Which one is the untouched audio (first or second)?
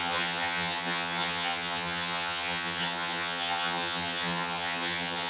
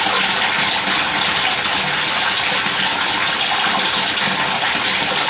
second